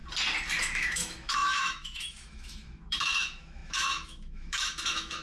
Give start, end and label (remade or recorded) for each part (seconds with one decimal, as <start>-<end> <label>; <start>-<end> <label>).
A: 0.0-0.6 recorded; 0.6-5.2 remade

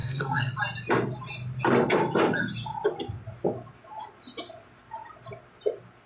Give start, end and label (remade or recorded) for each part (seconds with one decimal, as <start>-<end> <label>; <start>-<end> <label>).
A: 0.0-0.5 remade; 0.5-6.1 recorded

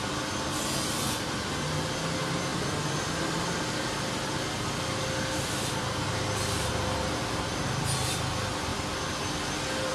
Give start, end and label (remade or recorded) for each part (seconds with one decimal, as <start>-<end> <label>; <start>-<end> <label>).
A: 0.0-9.9 recorded

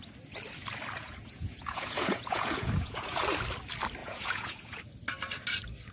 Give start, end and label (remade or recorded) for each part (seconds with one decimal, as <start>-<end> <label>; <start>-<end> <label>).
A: 0.0-1.0 recorded; 1.0-3.2 remade; 3.2-4.0 recorded; 4.0-4.8 remade; 4.8-5.9 recorded

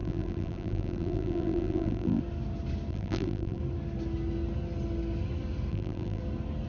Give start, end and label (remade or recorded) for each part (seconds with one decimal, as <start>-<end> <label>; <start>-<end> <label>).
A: 0.0-2.2 remade; 2.2-2.9 recorded; 2.9-3.6 remade; 3.6-5.7 recorded; 5.7-6.2 remade; 6.2-6.7 recorded

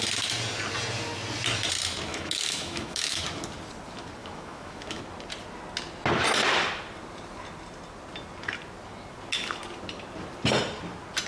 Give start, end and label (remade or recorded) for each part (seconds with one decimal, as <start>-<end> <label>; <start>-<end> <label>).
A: 0.0-2.1 recorded; 2.1-3.2 remade; 3.2-4.2 recorded; 4.2-5.0 remade; 5.0-11.3 recorded

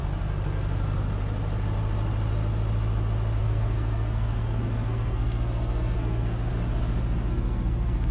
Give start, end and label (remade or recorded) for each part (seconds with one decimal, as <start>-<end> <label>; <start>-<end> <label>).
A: 0.0-3.4 recorded; 3.4-6.5 remade; 6.5-7.3 recorded; 7.3-8.1 remade